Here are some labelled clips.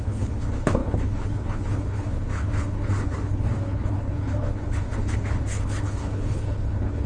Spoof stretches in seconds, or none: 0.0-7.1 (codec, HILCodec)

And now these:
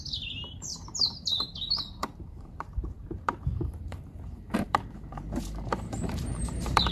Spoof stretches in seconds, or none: 0.0-0.7 (vocoder, BigVGAN v2); 2.0-6.9